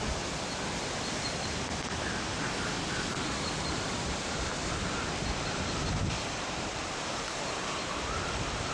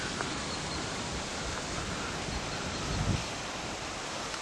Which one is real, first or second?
second